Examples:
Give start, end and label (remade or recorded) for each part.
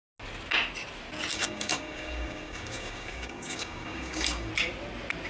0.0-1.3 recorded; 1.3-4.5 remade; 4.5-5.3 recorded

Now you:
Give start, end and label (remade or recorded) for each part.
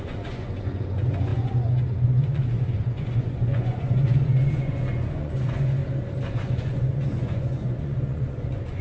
0.0-5.8 remade; 5.8-6.3 recorded; 6.3-8.8 remade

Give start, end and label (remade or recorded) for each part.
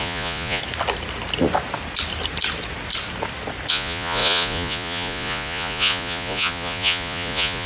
0.0-0.6 remade; 0.6-3.7 recorded; 3.7-7.7 remade